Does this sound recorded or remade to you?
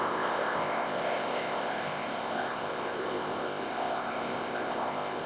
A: remade